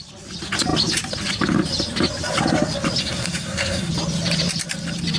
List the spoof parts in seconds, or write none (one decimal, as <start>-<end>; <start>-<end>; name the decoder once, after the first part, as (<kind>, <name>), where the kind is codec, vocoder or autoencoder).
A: 3.0-3.9 (codec, SNAC)